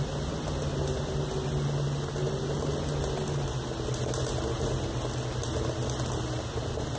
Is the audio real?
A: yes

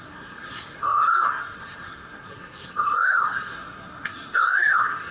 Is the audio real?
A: no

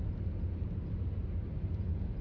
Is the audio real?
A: yes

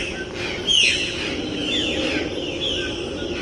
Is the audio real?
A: yes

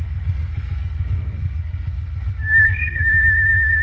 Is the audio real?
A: no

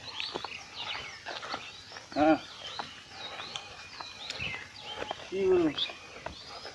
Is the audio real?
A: yes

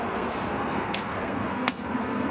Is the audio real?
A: no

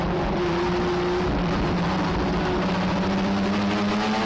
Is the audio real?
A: yes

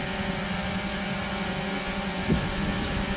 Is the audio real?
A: yes